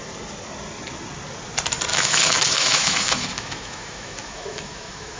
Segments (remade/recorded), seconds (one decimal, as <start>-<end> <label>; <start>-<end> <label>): 0.0-1.9 recorded; 1.9-5.2 remade